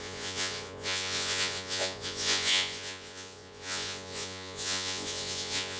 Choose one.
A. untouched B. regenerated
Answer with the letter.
B